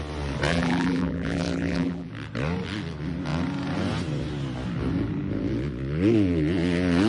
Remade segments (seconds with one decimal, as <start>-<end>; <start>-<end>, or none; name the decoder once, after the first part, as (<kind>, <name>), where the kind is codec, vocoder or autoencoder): 0.5-2.1 (vocoder, BigVGAN v2)